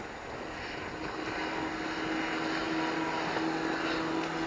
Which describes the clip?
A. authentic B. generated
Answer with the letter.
A